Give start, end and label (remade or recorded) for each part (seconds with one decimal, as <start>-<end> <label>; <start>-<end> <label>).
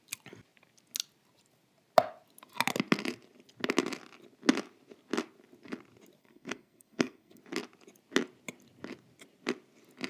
0.0-6.2 recorded; 6.2-7.4 remade; 7.4-10.1 recorded